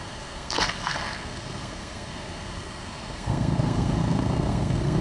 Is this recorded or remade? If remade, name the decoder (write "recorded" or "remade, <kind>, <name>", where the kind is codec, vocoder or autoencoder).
remade, codec, SNAC